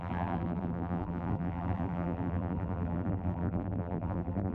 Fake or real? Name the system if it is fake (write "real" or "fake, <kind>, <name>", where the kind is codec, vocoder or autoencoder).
fake, vocoder, BigVGAN v2